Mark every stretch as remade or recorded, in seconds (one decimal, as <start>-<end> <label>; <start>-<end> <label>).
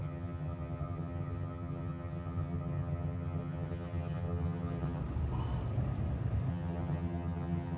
0.0-5.0 remade; 5.0-6.5 recorded; 6.5-7.8 remade